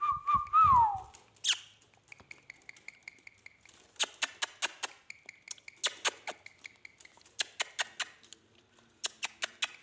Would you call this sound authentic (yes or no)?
yes